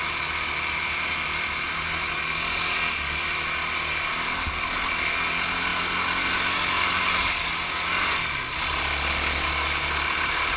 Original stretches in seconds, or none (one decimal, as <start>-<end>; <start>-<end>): 0.0-10.6